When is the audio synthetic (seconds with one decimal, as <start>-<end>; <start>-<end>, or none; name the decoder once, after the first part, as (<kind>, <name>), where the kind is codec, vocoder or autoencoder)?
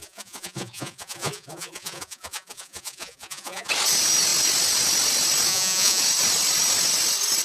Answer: 0.0-3.7 (vocoder, Vocos); 5.5-6.0